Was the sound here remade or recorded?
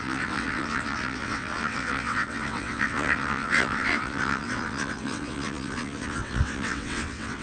remade